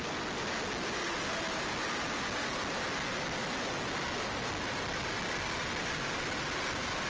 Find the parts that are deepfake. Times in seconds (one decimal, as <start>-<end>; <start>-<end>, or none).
none